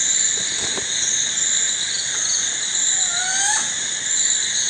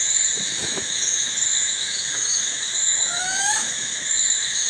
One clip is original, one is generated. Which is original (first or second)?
first